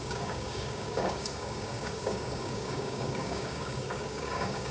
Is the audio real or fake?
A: fake